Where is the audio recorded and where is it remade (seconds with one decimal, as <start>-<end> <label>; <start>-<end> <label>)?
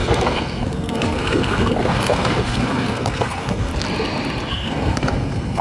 0.0-3.7 remade; 3.7-4.5 recorded; 4.5-5.6 remade